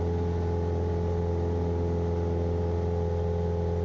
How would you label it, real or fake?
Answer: real